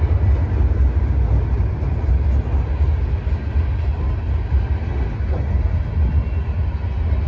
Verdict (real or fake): real